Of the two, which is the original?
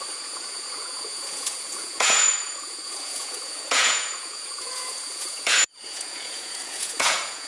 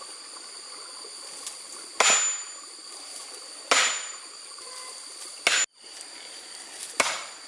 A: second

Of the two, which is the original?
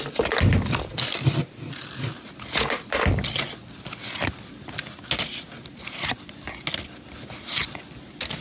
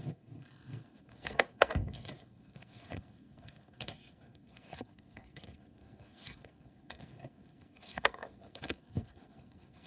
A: first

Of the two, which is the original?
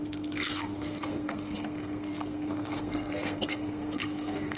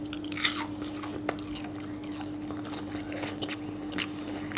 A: second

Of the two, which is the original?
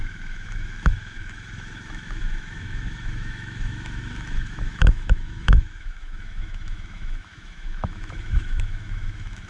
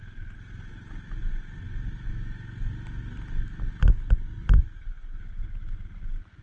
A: second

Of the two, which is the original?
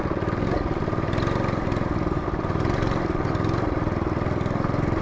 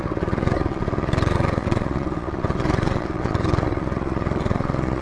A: first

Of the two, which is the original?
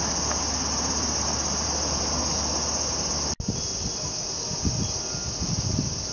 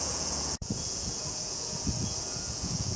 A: first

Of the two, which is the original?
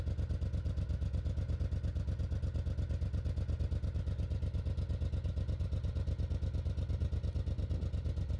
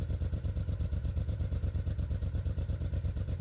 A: first